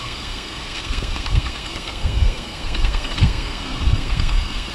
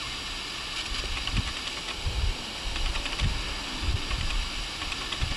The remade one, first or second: first